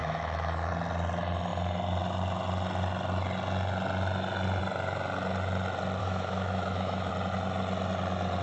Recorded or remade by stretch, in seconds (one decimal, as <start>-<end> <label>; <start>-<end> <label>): 0.0-0.7 remade; 0.7-6.0 recorded; 6.0-7.1 remade; 7.1-8.4 recorded